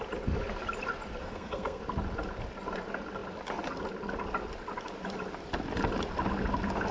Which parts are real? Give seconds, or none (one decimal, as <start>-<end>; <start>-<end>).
0.0-1.2; 1.8-6.9